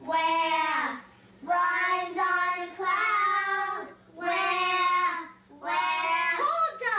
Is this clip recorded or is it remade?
recorded